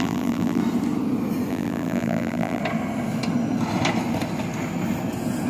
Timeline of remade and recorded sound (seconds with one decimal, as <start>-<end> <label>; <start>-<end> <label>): 0.0-0.6 remade; 0.6-1.5 recorded; 1.5-2.6 remade; 2.6-5.5 recorded